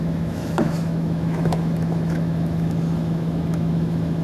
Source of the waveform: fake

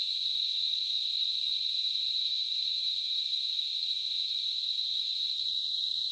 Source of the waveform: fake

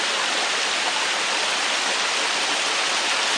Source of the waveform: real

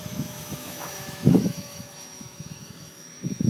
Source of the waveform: fake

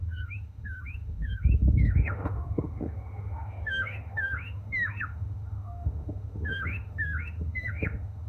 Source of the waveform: fake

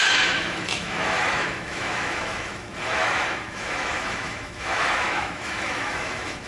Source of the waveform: fake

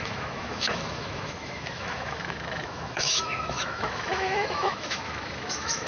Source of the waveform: fake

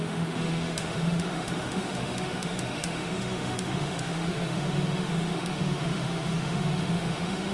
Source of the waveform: fake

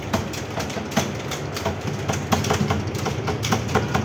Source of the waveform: real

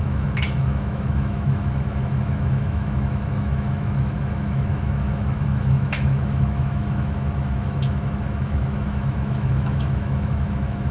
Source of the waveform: fake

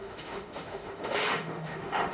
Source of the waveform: fake